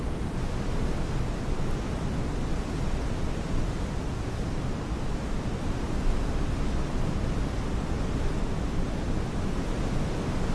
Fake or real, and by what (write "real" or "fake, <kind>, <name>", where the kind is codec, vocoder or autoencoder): real